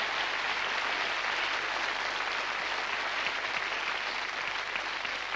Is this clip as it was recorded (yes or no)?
yes